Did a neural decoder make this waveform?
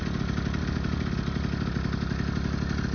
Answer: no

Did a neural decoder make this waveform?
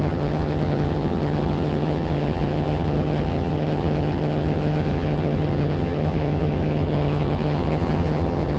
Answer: yes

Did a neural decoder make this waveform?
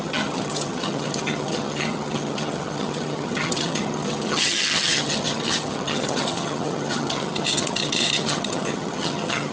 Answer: yes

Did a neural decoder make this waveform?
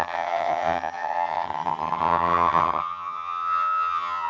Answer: yes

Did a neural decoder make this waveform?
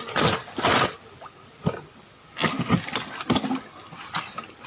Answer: no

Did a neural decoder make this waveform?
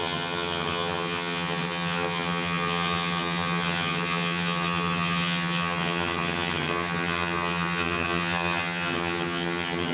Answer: yes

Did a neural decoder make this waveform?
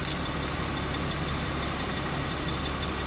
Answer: no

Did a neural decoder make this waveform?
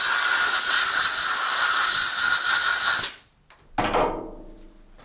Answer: no